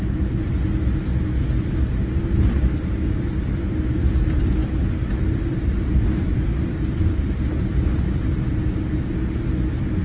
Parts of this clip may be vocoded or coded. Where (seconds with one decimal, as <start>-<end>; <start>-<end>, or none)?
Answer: none

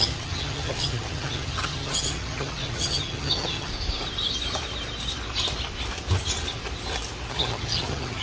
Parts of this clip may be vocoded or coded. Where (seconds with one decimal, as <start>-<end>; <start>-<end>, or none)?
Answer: 0.0-3.7; 7.3-8.2

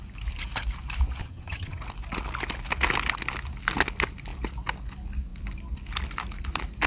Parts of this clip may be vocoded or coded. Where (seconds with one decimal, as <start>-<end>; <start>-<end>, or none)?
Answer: 1.2-1.8

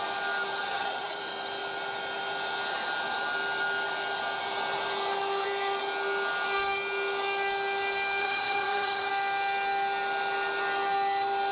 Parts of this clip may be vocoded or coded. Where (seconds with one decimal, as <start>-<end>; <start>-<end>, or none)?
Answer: 0.6-1.2; 8.2-9.1

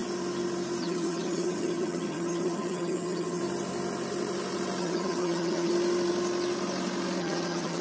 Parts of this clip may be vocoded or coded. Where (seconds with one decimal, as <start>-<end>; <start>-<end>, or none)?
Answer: 0.8-3.4; 4.8-5.7; 7.2-7.8

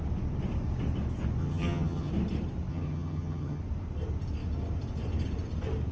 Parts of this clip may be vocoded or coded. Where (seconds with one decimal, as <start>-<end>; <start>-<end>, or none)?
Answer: 1.4-2.1; 2.7-3.6

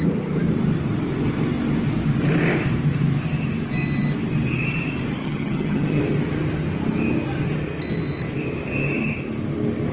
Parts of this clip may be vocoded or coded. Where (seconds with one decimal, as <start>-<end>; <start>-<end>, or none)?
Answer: 5.2-6.0